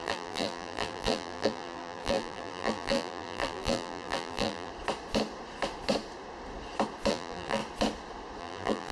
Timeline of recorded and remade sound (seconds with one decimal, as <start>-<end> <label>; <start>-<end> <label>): 0.0-4.7 remade; 4.7-7.1 recorded; 7.1-7.6 remade; 7.6-8.4 recorded; 8.4-8.9 remade